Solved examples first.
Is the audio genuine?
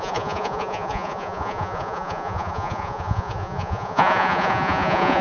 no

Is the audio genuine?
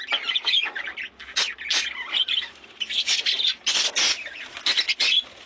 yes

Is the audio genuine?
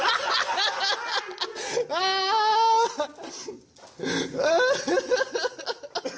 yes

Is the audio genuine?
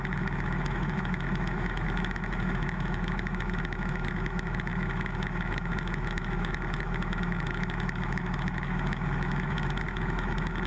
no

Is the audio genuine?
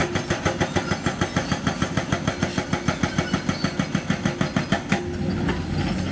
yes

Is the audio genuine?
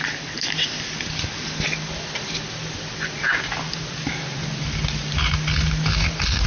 yes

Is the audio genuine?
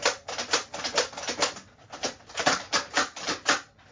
yes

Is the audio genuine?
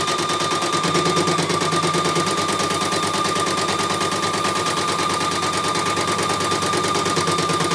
yes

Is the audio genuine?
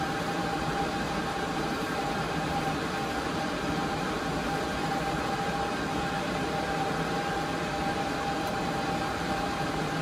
no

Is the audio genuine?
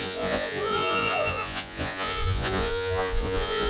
no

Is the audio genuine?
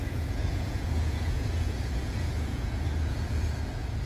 no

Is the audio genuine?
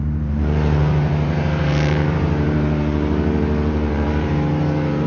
no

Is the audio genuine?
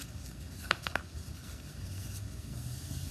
no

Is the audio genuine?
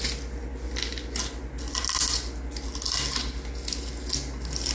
yes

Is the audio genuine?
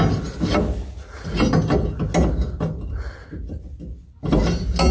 yes